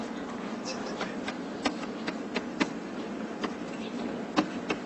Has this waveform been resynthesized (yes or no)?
no